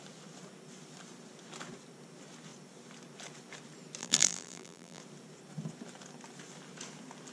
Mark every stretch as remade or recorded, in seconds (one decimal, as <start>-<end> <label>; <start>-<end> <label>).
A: 0.0-4.0 recorded; 4.0-5.0 remade; 5.0-7.3 recorded